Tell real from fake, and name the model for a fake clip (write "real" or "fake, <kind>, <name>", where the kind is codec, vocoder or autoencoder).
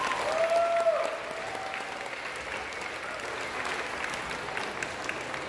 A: real